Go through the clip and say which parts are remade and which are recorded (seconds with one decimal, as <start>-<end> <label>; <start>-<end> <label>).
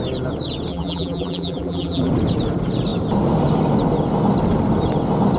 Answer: 0.0-0.7 recorded; 0.7-2.1 remade; 2.1-5.4 recorded